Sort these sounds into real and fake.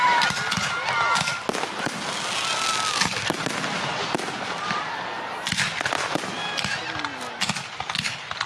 real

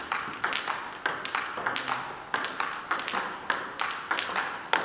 real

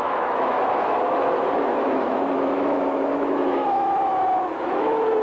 fake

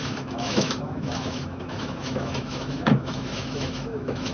fake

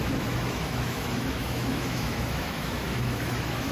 fake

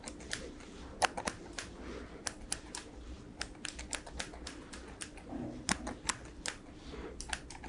real